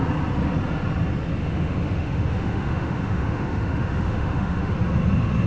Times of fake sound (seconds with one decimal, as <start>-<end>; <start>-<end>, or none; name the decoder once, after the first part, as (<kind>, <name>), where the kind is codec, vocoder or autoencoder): 1.4-4.7 (autoencoder, DAC-VAE)